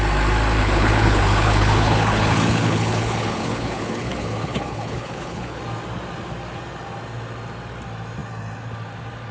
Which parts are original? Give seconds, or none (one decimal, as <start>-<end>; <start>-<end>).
0.0-0.6; 5.6-9.3